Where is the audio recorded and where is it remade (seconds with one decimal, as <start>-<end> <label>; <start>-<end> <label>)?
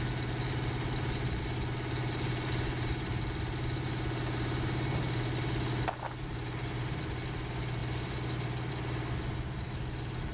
0.0-10.3 recorded